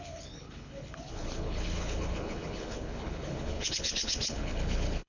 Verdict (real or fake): fake